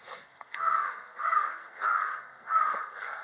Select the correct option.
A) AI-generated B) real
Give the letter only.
A